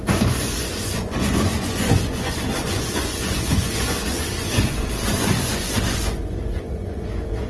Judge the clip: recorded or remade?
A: remade